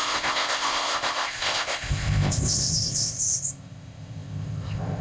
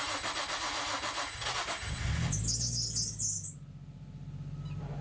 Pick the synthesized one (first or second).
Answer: first